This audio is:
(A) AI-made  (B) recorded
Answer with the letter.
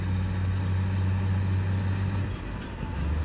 B